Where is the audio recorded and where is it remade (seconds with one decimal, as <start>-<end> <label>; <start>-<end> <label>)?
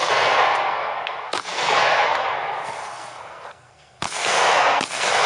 0.0-5.3 remade